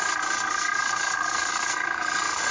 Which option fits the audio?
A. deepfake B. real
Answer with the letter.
A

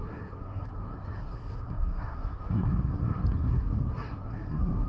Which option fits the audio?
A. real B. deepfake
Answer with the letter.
B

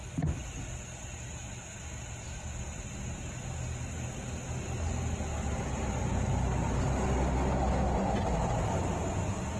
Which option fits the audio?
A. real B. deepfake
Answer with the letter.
A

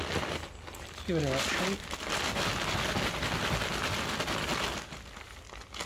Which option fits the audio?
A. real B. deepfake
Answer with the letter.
A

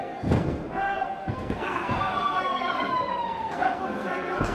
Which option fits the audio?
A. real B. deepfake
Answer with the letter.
B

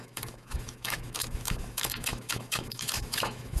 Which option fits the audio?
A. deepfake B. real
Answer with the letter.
A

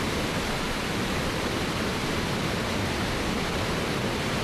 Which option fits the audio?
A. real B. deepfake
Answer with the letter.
B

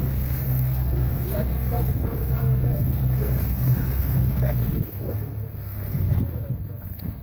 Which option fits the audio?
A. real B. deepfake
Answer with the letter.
B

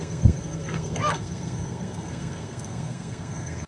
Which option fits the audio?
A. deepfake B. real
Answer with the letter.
A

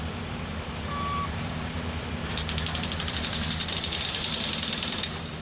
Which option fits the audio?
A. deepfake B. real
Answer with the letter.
A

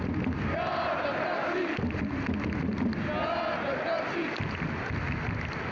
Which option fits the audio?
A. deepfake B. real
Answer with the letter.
B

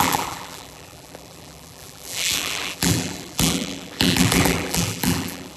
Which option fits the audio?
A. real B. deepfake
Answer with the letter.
B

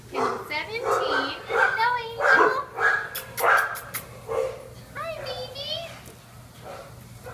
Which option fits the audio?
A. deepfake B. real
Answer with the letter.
B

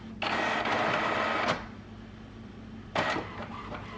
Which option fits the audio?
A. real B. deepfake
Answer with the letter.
A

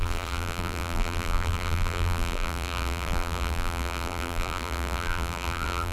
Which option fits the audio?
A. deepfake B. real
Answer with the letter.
A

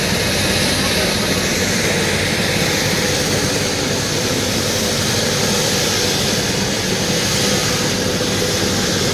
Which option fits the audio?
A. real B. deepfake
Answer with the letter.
A